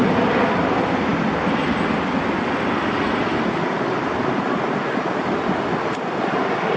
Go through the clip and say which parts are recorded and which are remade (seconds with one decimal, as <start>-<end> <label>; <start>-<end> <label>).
0.0-6.8 recorded